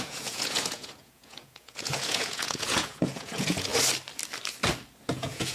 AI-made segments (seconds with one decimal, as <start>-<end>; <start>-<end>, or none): 0.0-3.7; 5.1-5.5

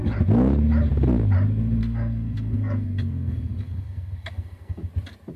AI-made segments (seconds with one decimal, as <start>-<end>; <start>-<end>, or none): 1.8-4.9

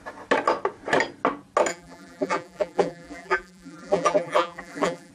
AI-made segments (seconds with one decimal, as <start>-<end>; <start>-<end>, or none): 1.7-5.1

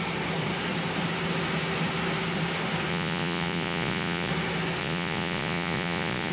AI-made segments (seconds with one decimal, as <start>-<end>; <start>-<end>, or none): 2.9-4.3; 4.8-6.3